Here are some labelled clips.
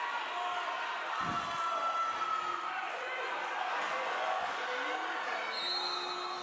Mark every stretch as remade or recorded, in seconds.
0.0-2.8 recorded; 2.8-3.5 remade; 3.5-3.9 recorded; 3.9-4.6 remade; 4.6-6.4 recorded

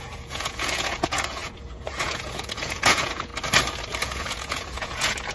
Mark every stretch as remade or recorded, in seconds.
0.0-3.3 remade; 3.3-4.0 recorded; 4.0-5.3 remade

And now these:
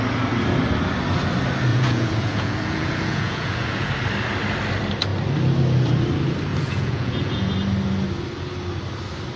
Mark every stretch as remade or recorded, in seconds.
0.0-1.7 recorded; 1.7-3.9 remade; 3.9-6.5 recorded; 6.5-7.5 remade; 7.5-9.4 recorded

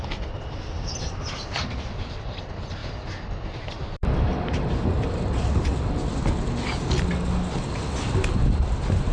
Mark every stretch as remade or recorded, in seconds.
0.0-9.1 recorded

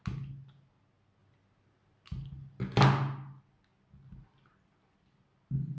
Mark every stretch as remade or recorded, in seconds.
0.0-5.8 recorded